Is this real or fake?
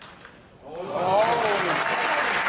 real